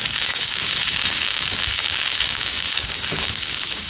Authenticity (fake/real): fake